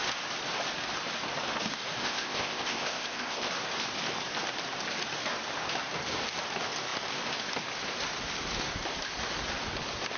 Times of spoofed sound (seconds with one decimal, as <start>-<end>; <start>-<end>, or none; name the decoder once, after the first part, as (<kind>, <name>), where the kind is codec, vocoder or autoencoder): 2.0-3.5 (codec, ZipCodec)